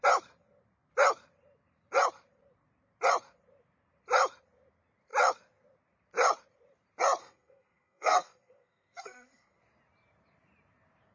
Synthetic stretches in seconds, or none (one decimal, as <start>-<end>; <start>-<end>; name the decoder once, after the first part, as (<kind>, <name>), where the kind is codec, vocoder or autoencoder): 7.2-9.6 (codec, SNAC)